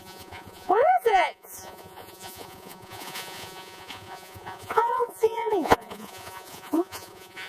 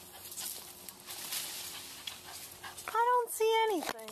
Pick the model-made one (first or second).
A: first